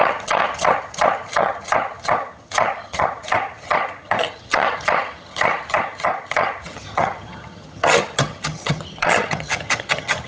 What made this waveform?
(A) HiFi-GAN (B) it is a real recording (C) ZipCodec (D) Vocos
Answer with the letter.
A